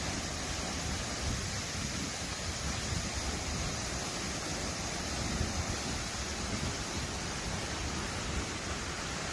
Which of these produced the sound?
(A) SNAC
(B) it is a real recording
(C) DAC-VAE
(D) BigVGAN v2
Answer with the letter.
B